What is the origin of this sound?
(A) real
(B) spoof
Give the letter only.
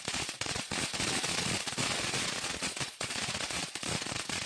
B